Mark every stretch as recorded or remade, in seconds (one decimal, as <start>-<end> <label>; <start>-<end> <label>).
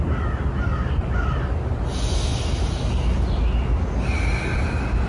0.0-5.1 recorded